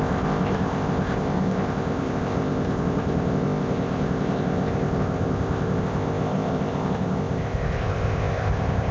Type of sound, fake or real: fake